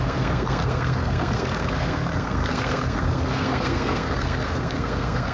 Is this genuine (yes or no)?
no